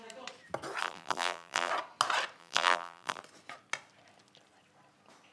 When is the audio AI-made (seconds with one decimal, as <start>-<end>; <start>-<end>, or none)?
0.8-1.7; 2.4-3.2